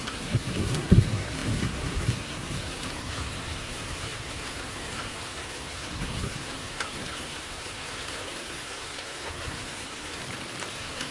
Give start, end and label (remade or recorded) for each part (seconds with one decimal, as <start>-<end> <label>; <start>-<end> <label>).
0.0-10.2 remade; 10.2-10.7 recorded; 10.7-11.1 remade